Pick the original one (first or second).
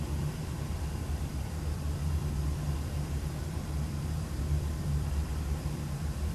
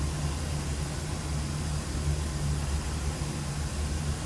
second